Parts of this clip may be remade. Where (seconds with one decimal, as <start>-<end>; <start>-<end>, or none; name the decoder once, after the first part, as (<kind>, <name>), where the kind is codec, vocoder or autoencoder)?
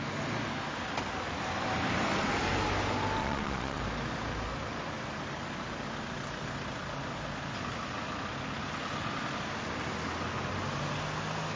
3.2-3.8 (vocoder, Vocos)